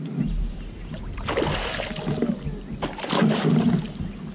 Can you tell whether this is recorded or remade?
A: recorded